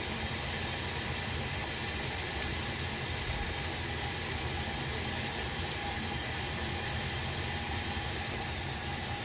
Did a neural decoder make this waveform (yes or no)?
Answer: no